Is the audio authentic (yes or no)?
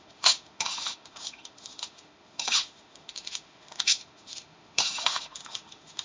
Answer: no